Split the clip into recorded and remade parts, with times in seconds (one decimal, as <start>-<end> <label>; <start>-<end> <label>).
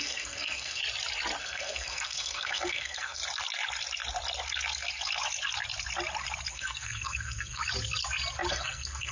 0.0-0.8 remade; 0.8-1.4 recorded; 1.4-3.2 remade; 3.2-6.5 recorded; 6.5-7.6 remade; 7.6-8.5 recorded; 8.5-9.1 remade